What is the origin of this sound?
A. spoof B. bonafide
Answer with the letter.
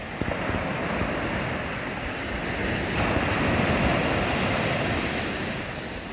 B